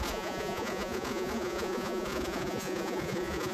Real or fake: fake